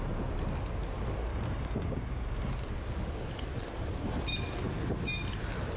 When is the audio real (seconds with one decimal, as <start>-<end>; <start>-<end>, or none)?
0.0-1.3; 2.5-5.8